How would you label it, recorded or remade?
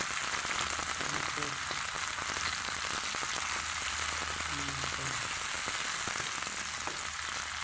recorded